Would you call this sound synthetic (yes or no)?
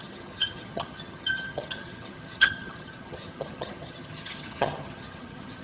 yes